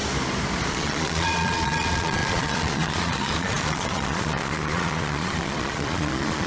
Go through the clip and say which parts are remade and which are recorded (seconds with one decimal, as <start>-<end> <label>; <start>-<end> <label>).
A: 0.0-0.7 recorded; 0.7-6.5 remade